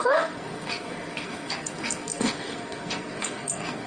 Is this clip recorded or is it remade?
remade